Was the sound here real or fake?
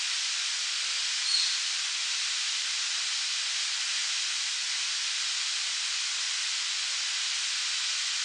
real